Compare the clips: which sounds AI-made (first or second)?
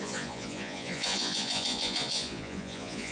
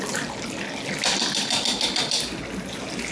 first